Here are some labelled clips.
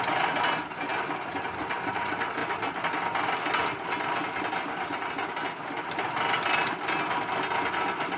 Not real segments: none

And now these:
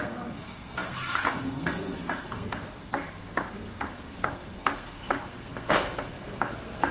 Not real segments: 0.0-6.9 (codec, SNAC)

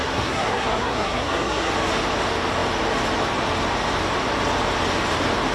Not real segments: 0.0-1.7 (codec, SNAC)

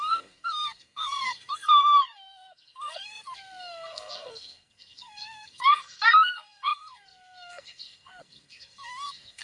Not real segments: 0.0-9.4 (codec, SNAC)

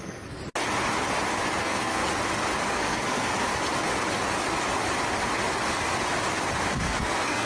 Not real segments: 0.0-0.4 (codec, SNAC); 1.6-2.0; 2.7-3.3; 6.7-7.5

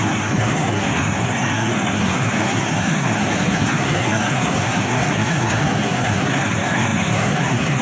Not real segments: 0.0-7.8 (codec, SNAC)